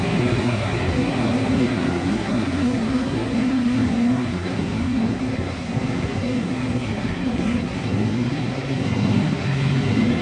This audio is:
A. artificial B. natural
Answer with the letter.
A